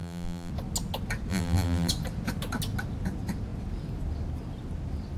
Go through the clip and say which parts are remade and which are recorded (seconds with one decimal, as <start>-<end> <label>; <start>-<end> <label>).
0.0-0.5 remade; 0.5-1.3 recorded; 1.3-1.9 remade; 1.9-5.2 recorded